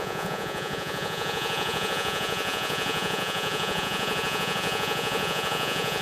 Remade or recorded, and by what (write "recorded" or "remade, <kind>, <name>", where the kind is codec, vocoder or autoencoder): remade, vocoder, Vocos